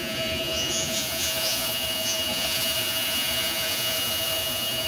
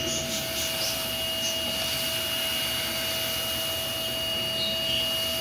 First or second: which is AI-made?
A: first